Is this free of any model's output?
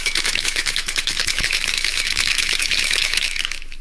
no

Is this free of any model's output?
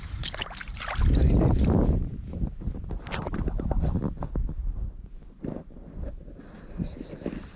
yes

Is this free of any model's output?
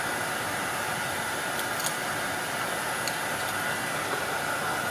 yes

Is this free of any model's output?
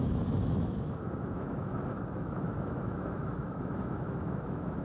no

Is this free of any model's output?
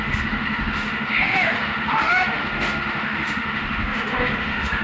no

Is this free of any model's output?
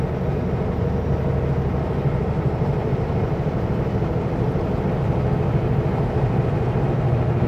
yes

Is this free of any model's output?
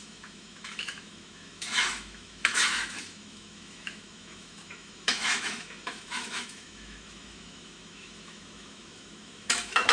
no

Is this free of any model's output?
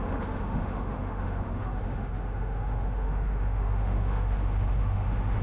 no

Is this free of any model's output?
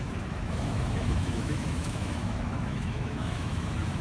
no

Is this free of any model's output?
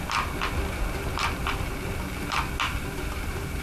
yes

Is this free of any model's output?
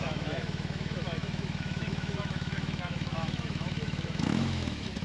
no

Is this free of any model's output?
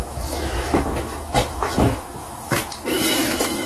no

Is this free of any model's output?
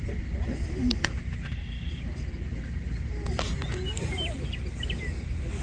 yes